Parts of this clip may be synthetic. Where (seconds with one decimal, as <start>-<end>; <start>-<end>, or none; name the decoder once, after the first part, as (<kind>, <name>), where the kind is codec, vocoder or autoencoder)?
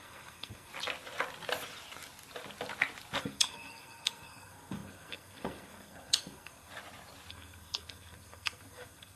0.0-0.7 (codec, SNAC); 3.2-6.7; 7.3-9.2